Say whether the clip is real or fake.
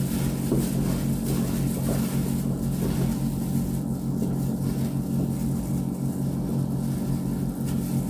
real